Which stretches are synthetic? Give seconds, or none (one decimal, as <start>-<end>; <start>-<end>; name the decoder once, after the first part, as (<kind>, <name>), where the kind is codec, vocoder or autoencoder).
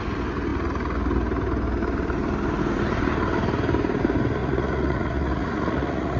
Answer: 4.4-6.2 (vocoder, Vocos)